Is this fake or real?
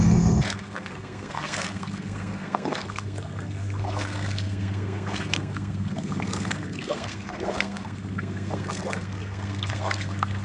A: fake